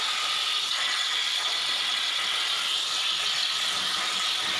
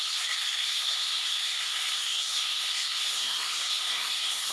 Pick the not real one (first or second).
second